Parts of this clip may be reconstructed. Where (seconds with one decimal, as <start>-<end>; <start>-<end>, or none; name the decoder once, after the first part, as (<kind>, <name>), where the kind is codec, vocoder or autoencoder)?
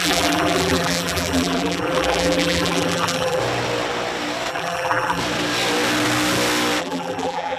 0.0-3.4 (vocoder, BigVGAN v2); 4.5-5.2; 6.8-7.6